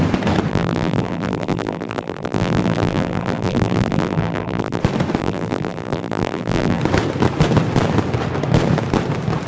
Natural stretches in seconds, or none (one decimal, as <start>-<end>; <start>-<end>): 0.0-0.5; 4.8-5.2; 6.8-9.5